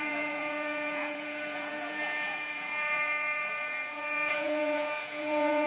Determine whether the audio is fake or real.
fake